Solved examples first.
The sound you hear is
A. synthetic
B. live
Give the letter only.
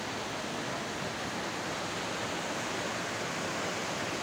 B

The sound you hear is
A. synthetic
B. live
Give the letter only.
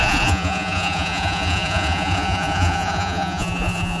A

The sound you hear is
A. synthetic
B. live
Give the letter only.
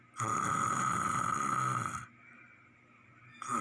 B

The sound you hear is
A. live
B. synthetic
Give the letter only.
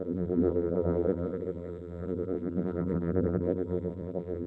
B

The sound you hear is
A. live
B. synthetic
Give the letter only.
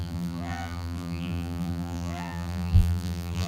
B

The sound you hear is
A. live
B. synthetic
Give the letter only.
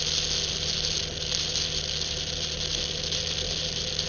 A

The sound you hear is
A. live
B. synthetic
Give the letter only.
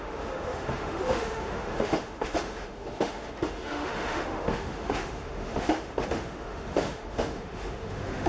B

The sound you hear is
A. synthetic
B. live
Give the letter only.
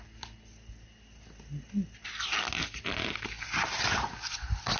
B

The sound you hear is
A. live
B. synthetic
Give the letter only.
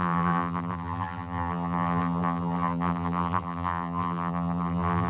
B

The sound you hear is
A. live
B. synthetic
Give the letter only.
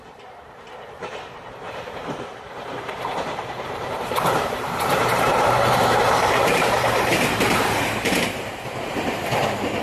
B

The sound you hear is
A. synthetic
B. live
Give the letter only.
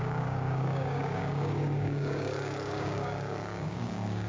A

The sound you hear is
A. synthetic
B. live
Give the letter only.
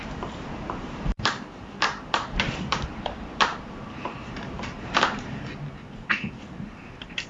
A